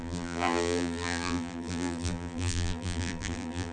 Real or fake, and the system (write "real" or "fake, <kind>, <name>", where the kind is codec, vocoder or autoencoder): fake, vocoder, BigVGAN v2